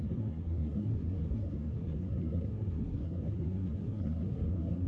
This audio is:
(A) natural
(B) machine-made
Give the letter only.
B